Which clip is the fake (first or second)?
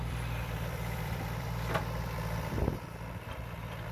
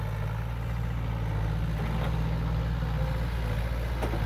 first